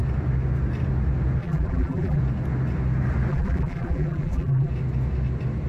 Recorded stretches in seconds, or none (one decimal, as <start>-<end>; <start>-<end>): 0.0-1.4; 2.2-3.3; 4.7-5.7